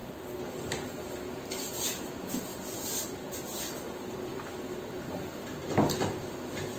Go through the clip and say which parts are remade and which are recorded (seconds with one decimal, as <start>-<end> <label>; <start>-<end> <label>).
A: 0.0-0.9 recorded; 0.9-4.3 remade; 4.3-4.8 recorded; 4.8-6.8 remade